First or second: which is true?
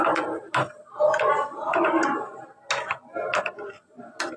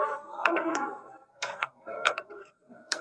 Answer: first